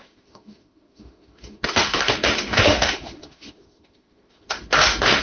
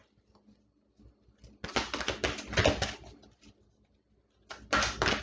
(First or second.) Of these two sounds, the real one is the second